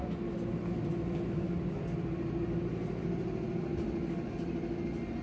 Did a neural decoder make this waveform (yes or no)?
no